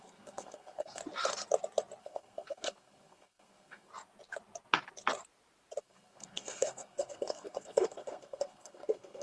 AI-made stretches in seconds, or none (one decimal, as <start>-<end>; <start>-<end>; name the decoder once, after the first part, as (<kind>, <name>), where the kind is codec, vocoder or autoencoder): 0.0-1.0 (codec, SNAC); 2.0-3.9; 5.8-9.2